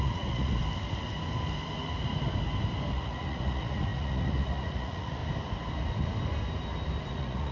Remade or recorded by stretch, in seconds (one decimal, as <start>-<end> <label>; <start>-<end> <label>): 0.0-0.6 remade; 0.6-2.9 recorded; 2.9-5.2 remade; 5.2-7.1 recorded; 7.1-7.5 remade